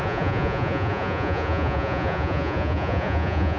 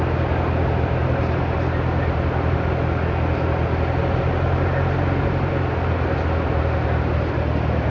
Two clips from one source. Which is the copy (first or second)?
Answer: first